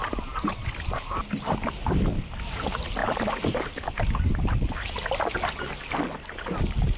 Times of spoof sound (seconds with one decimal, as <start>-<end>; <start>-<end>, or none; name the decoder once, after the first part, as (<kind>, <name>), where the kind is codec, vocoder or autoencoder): none

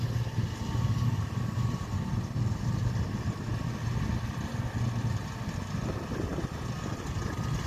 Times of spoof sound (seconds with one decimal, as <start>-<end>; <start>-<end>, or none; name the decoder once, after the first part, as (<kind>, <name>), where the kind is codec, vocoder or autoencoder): none

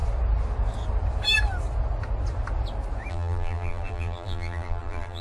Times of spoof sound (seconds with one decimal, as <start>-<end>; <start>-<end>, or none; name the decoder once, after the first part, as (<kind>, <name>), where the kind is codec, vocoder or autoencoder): 3.1-5.2 (vocoder, BigVGAN v2)

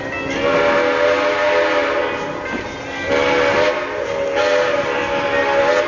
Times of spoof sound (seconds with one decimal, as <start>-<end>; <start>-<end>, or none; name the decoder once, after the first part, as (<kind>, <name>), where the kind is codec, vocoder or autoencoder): none